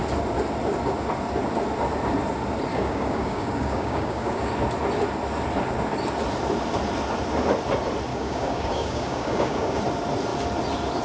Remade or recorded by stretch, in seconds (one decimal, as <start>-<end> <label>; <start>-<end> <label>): 0.0-2.7 recorded; 2.7-4.5 remade; 4.5-8.1 recorded; 8.1-9.8 remade; 9.8-11.0 recorded